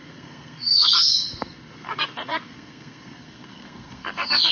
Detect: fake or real fake